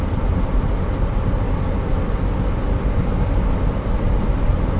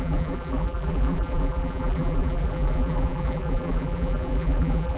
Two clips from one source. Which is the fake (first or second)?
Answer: second